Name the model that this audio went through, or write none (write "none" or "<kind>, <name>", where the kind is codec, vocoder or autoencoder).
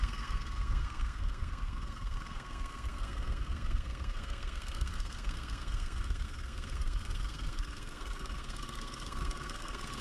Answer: codec, SNAC